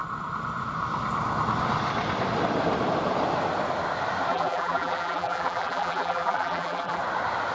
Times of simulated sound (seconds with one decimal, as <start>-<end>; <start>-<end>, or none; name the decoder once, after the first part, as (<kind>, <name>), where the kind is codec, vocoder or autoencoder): 4.3-7.0 (vocoder, BigVGAN v2)